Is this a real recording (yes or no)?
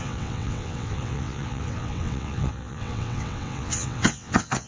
no